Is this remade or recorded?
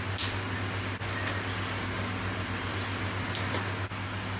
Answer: recorded